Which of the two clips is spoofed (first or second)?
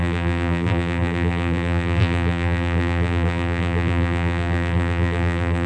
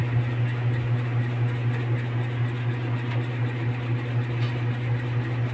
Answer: first